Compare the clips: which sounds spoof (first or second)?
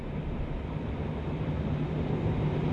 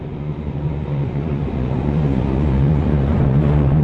second